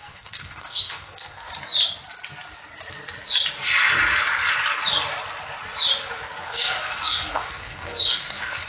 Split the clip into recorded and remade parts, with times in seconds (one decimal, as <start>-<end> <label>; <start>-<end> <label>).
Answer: 0.0-1.5 remade; 1.5-6.4 recorded; 6.4-8.7 remade

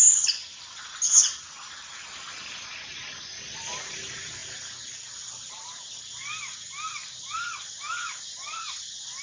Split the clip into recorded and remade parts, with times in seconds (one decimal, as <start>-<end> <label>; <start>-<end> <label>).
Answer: 0.0-9.2 recorded